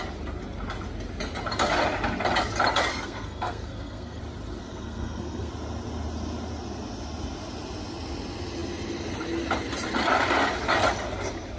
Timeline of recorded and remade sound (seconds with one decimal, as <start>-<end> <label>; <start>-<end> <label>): 0.0-2.9 recorded; 2.9-4.2 remade; 4.2-4.7 recorded; 4.7-5.5 remade; 5.5-11.6 recorded